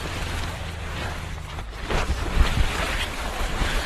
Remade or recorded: remade